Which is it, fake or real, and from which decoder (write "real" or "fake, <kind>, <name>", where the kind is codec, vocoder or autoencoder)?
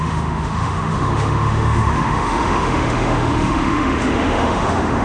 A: fake, autoencoder, DAC-VAE